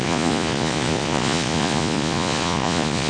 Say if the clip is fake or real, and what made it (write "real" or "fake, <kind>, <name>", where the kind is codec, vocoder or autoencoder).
fake, vocoder, Vocos